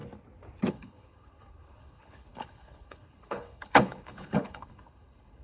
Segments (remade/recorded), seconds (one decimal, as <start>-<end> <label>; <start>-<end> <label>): 0.0-0.7 recorded; 0.7-5.4 remade